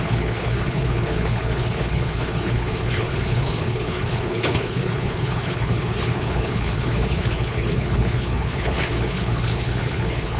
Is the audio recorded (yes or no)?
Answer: no